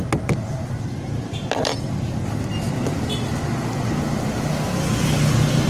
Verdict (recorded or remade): recorded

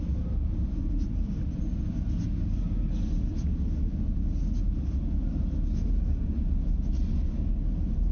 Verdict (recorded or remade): recorded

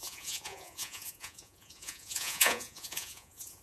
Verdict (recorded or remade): remade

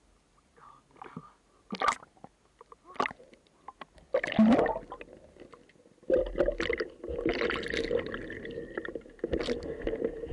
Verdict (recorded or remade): recorded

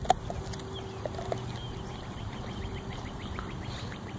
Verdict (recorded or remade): recorded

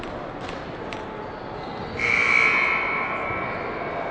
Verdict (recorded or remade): recorded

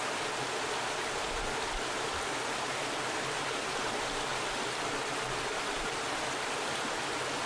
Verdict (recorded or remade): recorded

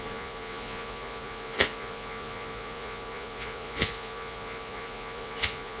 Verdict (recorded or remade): remade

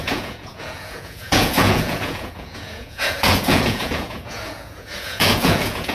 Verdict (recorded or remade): remade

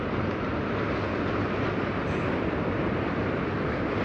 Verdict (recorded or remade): recorded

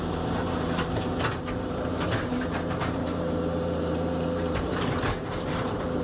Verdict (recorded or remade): remade